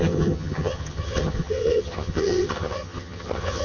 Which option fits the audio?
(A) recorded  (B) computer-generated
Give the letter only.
B